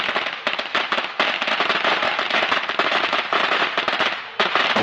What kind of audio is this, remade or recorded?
remade